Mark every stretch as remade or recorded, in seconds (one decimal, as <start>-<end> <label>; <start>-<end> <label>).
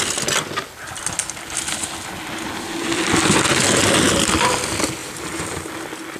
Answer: 0.0-5.0 recorded; 5.0-5.7 remade; 5.7-6.2 recorded